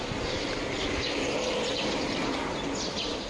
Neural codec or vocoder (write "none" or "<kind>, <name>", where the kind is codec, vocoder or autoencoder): none